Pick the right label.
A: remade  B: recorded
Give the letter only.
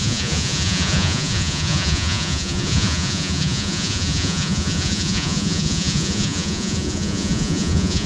A